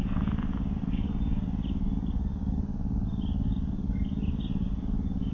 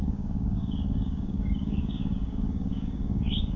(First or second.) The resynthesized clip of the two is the second